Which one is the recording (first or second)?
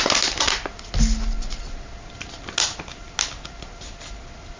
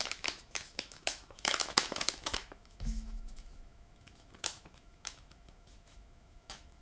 first